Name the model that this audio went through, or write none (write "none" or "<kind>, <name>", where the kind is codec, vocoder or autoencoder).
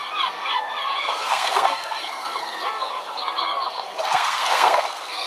codec, SNAC